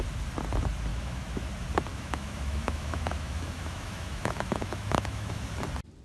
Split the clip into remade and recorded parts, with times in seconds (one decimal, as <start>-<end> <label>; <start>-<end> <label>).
0.0-0.9 recorded; 0.9-1.5 remade; 1.5-1.9 recorded; 1.9-5.5 remade; 5.5-6.0 recorded